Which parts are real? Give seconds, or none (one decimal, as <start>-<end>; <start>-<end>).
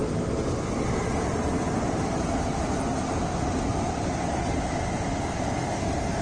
0.0-3.7; 5.1-5.7